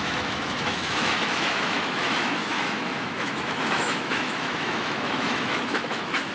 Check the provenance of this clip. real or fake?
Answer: fake